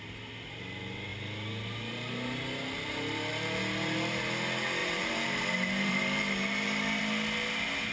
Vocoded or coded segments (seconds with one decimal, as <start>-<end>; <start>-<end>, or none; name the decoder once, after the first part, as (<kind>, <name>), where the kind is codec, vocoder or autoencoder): 4.8-7.0 (vocoder, BigVGAN v2)